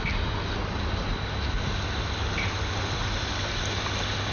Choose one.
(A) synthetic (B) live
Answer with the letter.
B